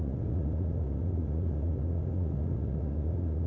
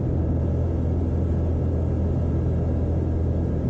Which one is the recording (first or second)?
second